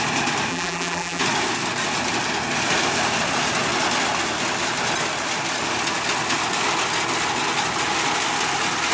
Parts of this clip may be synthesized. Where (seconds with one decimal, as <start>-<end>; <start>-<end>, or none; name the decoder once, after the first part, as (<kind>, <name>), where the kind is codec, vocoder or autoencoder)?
0.5-1.2 (vocoder, BigVGAN v2)